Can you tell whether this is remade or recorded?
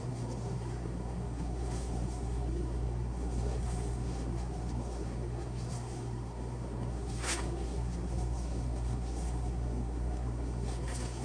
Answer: remade